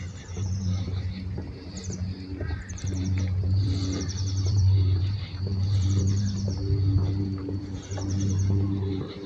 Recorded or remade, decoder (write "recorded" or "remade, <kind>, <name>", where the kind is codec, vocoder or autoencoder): remade, vocoder, BigVGAN v2